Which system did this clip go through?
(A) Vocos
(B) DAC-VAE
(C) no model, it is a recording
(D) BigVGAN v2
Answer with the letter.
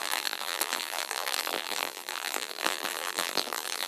D